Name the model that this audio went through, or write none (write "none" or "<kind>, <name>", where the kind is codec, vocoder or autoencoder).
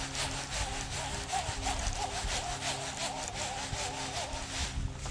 none